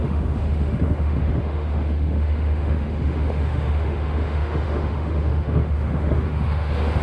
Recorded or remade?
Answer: remade